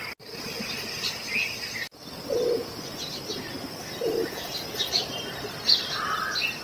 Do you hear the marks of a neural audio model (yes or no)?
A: no